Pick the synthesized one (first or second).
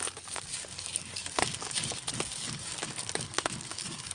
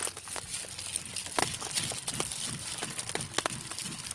first